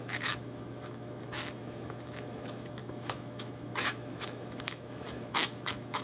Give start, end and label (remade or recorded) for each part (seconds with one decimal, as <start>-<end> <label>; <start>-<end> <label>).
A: 0.0-6.0 remade